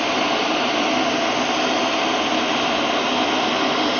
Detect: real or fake real